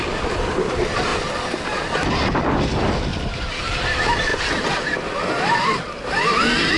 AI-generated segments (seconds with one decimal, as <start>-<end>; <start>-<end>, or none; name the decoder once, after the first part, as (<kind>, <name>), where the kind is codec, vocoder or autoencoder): none